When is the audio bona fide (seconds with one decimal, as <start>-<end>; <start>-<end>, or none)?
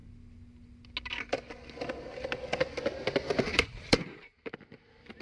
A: 0.0-3.5; 4.5-5.2